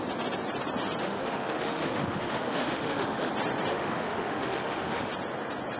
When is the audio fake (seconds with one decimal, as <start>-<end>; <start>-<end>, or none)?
1.0-3.3; 3.7-5.1